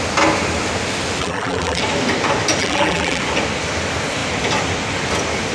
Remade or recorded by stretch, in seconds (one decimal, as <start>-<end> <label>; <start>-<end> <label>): 0.0-1.2 recorded; 1.2-1.8 remade; 1.8-2.6 recorded; 2.6-3.2 remade; 3.2-5.5 recorded